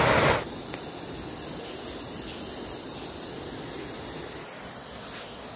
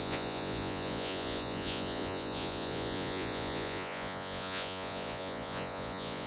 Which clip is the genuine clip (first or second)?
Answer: first